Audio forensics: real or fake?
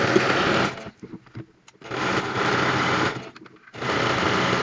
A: real